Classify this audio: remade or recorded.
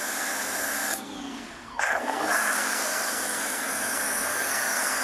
remade